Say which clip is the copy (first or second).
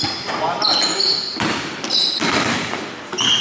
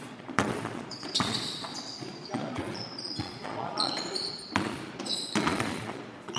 second